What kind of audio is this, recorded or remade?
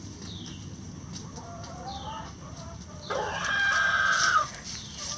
recorded